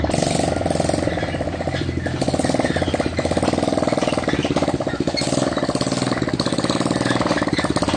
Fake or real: real